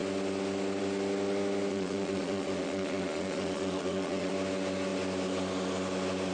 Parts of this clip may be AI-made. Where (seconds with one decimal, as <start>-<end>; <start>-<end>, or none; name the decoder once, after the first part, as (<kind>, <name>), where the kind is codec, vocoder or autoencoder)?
1.7-4.3 (vocoder, Vocos)